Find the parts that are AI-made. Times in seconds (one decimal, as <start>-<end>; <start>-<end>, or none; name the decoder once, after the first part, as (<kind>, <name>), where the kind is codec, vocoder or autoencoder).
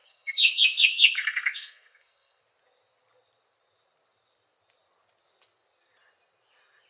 0.0-2.4 (codec, SNAC)